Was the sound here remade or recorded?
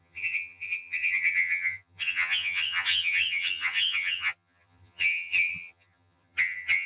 remade